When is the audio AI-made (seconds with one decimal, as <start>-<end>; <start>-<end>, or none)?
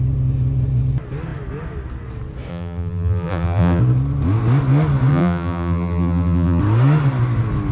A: 2.5-3.8; 5.1-6.6